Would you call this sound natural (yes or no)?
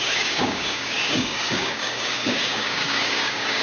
no